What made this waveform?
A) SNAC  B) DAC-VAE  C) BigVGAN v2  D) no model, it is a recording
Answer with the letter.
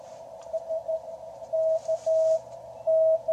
D